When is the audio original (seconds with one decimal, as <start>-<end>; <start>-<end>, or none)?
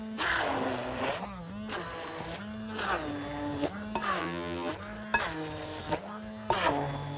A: 0.0-4.2; 4.7-7.2